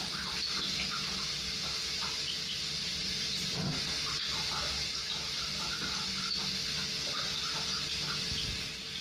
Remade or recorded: recorded